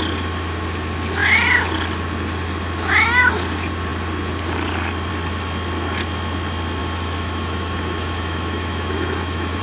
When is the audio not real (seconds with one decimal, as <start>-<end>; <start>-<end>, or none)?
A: 6.8-9.6